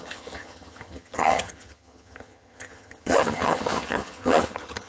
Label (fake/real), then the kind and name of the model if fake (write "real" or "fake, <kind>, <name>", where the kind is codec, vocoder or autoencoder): fake, vocoder, HiFi-GAN